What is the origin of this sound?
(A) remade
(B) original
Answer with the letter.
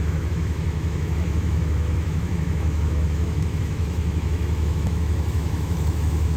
A